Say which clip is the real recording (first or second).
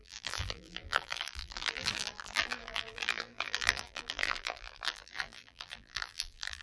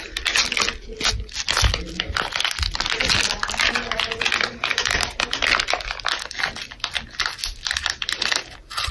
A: second